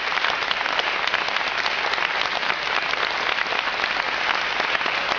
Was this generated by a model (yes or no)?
no